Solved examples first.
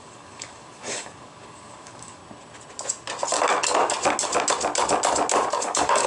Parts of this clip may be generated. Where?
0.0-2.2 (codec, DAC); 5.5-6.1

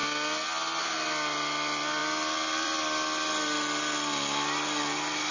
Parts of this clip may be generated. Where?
0.8-5.3 (vocoder, BigVGAN v2)

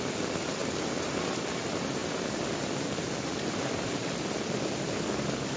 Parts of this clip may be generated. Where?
0.6-1.5 (vocoder, BigVGAN v2); 2.0-5.6

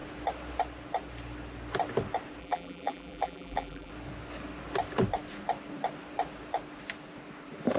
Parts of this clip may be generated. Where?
2.4-3.9 (vocoder, BigVGAN v2)

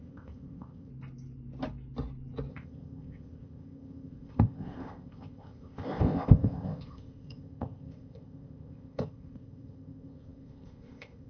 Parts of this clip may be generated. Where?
0.0-0.9 (codec, ZipCodec); 2.5-11.3

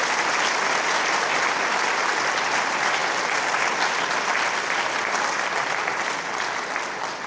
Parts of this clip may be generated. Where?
none